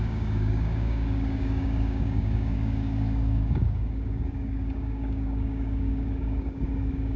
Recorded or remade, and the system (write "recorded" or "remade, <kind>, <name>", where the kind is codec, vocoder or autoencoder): remade, codec, DAC